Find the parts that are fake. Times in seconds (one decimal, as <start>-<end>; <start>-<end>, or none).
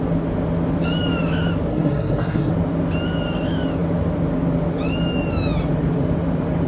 1.7-2.5